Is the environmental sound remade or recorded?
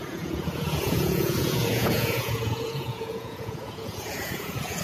remade